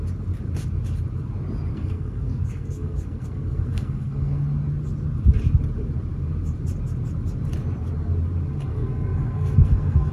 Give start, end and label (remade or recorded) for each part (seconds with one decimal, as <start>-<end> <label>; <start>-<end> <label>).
0.0-1.7 recorded; 1.7-4.4 remade; 4.4-8.7 recorded; 8.7-10.1 remade